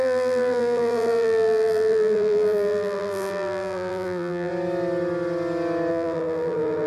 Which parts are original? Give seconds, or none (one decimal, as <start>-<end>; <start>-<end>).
4.5-5.9